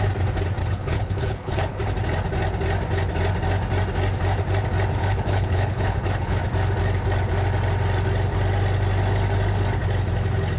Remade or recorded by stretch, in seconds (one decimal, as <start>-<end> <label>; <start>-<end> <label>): 0.0-0.6 recorded; 0.6-1.8 remade; 1.8-5.0 recorded; 5.0-6.4 remade; 6.4-10.6 recorded